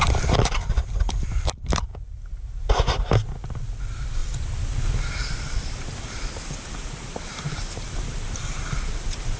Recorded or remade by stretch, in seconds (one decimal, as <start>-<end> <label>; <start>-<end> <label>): 0.0-1.9 remade; 1.9-3.8 recorded; 3.8-4.2 remade; 4.2-5.0 recorded; 5.0-9.4 remade